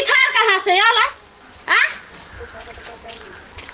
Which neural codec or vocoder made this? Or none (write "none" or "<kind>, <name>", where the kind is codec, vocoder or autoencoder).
vocoder, Vocos